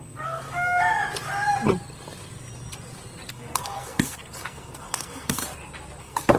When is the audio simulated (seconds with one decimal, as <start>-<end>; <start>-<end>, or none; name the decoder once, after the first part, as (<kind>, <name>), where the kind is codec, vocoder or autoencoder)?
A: 0.0-0.8 (codec, SNAC); 3.3-5.4; 6.0-6.4